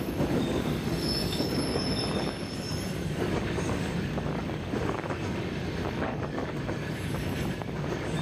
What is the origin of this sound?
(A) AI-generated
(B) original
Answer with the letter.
A